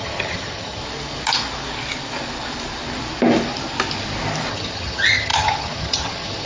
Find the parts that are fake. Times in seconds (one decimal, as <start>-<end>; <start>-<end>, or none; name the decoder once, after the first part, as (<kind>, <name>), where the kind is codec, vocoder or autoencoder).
0.0-0.8 (vocoder, HiFi-GAN); 4.5-6.5